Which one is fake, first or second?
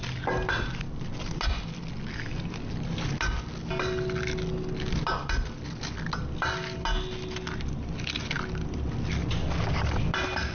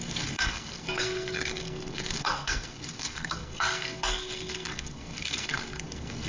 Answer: second